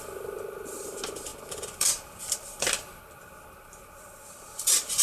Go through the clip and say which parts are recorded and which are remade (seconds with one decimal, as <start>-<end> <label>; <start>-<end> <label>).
0.0-5.0 remade